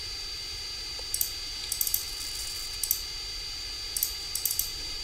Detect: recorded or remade recorded